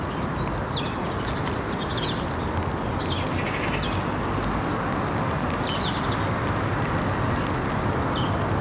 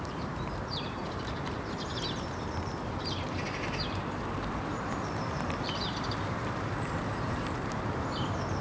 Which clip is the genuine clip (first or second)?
first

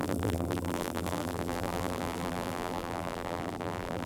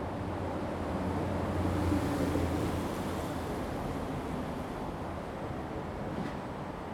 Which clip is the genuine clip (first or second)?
second